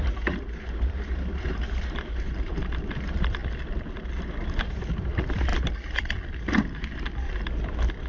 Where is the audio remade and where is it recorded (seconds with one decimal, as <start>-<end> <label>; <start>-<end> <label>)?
0.0-3.4 remade; 3.4-4.1 recorded; 4.1-5.5 remade; 5.5-8.1 recorded